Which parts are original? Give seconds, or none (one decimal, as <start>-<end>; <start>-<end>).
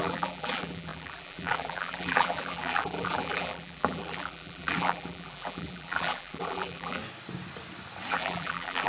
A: 7.0-8.1